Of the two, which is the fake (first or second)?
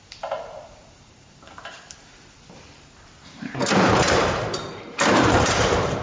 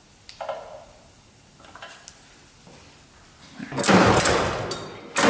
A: first